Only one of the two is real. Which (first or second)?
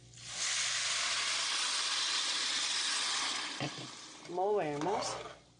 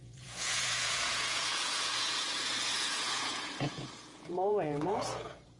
first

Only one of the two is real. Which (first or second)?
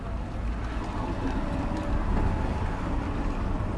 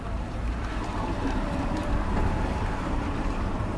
first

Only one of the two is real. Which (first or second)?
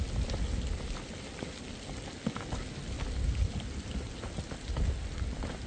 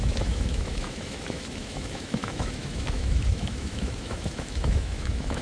first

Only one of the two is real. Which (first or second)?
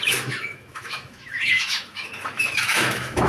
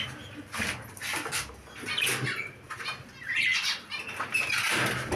second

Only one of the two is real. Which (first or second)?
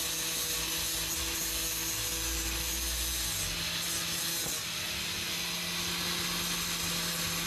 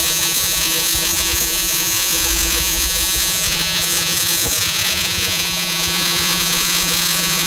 first